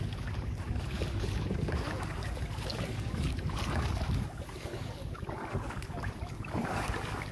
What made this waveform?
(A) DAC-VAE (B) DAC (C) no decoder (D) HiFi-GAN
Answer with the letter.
B